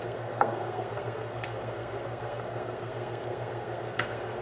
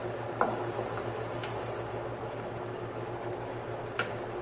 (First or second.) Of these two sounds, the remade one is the first